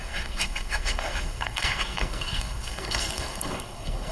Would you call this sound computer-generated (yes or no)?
yes